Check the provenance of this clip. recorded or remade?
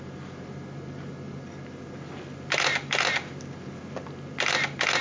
recorded